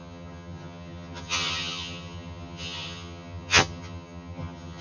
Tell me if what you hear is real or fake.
fake